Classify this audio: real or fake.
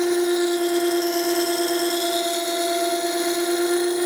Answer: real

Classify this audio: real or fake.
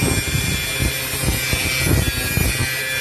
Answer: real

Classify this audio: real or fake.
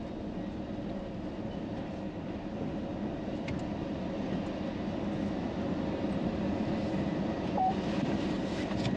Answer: real